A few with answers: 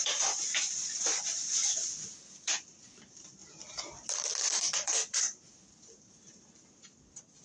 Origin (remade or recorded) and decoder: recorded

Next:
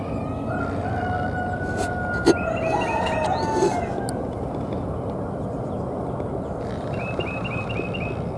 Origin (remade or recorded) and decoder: recorded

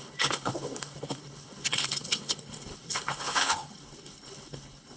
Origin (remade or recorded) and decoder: remade, codec, HILCodec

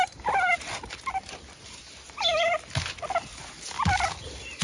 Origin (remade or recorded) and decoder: recorded